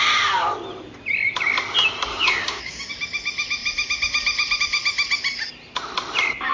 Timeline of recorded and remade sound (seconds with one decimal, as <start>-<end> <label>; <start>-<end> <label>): 0.0-2.1 recorded; 2.1-2.9 remade; 2.9-6.5 recorded